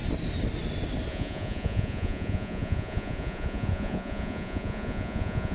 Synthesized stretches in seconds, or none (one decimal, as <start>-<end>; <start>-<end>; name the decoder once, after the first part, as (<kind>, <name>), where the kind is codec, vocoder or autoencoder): 1.1-5.5 (vocoder, Vocos)